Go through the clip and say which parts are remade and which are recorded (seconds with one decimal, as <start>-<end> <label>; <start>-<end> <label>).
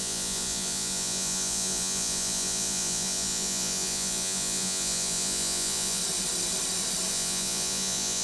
0.0-6.0 remade; 6.0-7.1 recorded; 7.1-8.2 remade